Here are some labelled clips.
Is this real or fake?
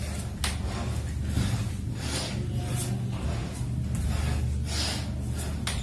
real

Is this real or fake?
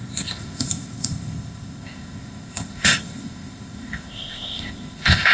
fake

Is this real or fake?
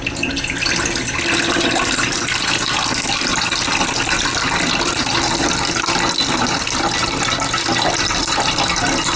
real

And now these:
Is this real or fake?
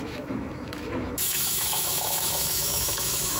fake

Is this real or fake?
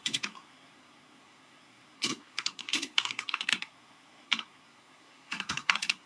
fake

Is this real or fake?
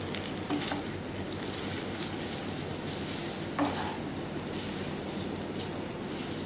real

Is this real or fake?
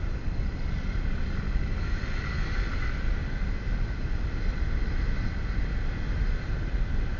real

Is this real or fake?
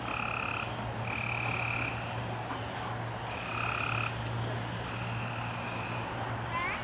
real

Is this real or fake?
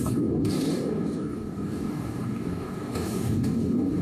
fake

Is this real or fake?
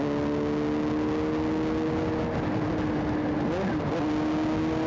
real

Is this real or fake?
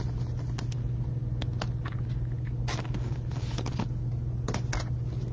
real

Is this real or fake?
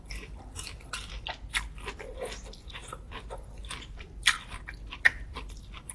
fake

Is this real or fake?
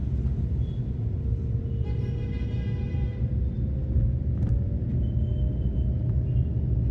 real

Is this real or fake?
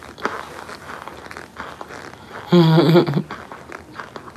real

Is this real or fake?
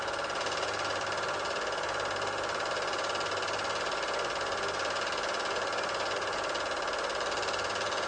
real